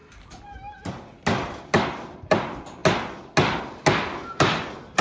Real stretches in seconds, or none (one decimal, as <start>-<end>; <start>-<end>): 0.0-5.0